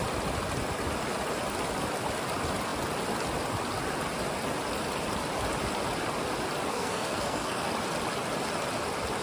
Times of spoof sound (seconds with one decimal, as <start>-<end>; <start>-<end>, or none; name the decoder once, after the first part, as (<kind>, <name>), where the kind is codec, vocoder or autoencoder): 6.7-7.7 (codec, SNAC)